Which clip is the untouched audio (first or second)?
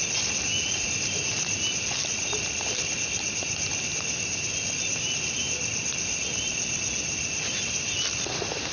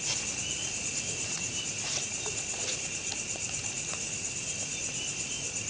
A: first